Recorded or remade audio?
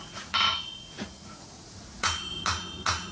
remade